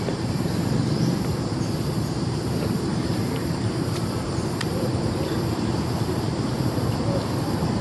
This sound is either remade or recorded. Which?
remade